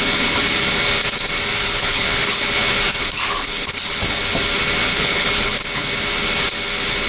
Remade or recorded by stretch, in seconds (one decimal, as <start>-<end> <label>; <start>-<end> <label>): 0.0-1.6 recorded; 1.6-2.4 remade; 2.4-3.0 recorded; 3.0-3.7 remade; 3.7-4.9 recorded; 4.9-5.6 remade; 5.6-7.1 recorded